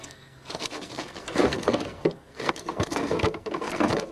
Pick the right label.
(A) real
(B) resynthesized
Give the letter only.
B